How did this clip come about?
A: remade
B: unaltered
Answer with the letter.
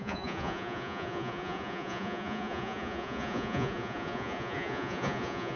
A